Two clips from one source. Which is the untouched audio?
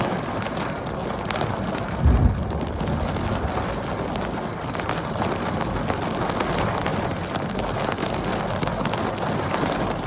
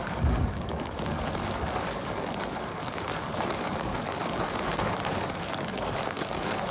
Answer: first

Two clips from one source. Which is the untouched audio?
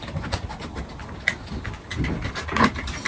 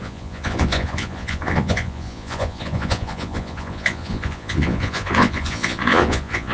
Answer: first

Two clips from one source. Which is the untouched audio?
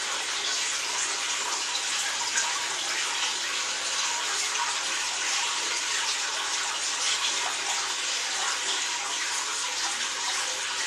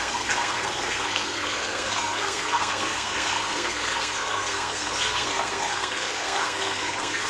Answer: first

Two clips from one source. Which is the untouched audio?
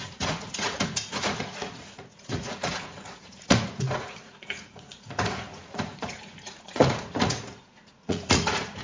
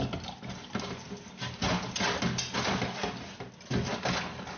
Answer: second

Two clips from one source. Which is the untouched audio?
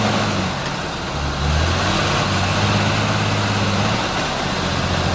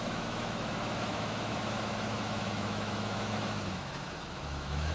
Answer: first